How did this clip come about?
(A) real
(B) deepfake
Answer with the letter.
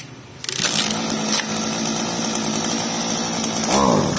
A